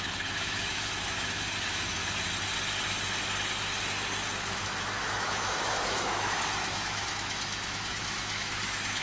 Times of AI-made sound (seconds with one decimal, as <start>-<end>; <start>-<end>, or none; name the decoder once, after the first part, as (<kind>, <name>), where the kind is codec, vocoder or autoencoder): 0.0-2.0 (autoencoder, DAC-VAE); 4.6-9.0